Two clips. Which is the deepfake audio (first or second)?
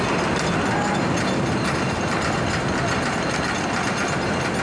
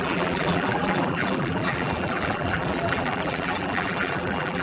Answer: second